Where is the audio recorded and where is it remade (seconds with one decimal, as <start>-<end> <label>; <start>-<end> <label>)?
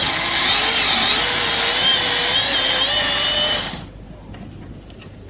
0.0-5.3 recorded